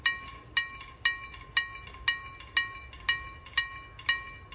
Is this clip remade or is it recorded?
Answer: recorded